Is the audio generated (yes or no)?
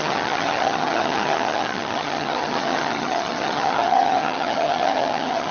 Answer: yes